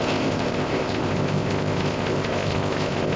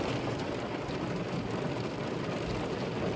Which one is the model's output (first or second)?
first